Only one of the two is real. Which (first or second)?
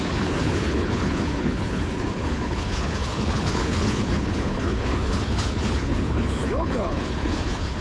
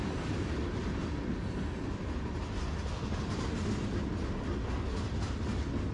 second